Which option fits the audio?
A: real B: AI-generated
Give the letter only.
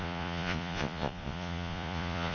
B